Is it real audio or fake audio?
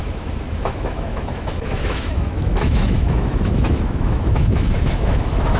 fake